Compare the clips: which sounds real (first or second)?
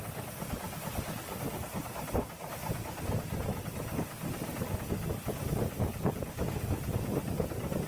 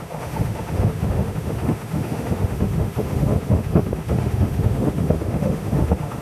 first